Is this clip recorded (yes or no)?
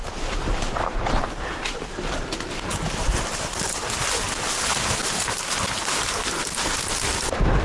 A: yes